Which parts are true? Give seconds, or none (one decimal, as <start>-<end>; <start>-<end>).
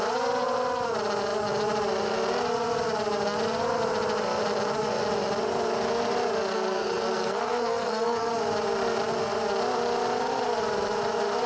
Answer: 0.0-6.5; 8.3-11.5